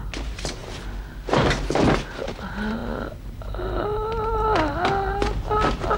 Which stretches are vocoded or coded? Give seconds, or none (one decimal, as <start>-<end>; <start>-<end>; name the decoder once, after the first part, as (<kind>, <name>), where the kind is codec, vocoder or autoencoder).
none